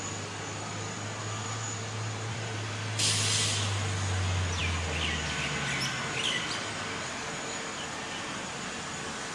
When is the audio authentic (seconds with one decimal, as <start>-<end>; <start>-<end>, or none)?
0.0-1.4; 2.8-9.3